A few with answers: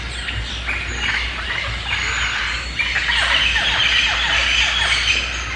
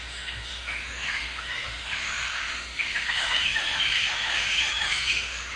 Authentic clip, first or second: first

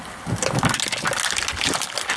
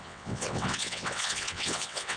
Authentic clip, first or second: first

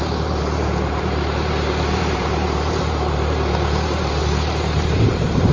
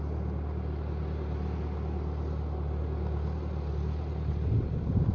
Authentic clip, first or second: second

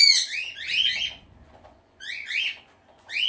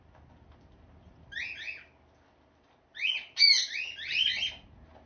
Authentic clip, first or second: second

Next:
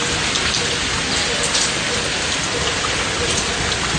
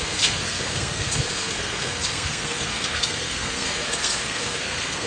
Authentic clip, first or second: first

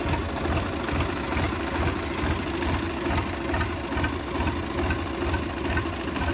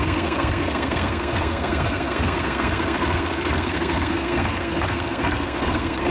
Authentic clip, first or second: first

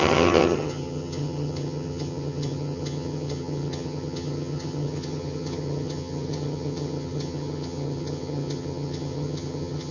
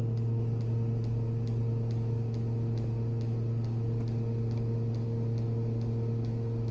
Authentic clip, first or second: second